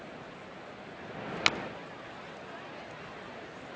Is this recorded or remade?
recorded